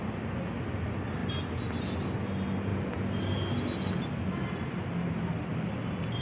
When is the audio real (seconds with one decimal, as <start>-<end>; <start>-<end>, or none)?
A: 0.0-6.2